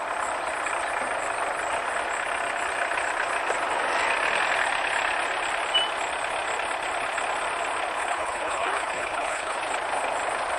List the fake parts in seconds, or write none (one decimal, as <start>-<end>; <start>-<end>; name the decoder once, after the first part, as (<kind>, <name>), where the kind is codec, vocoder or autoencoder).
8.0-9.6 (codec, HILCodec)